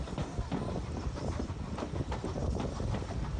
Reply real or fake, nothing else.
real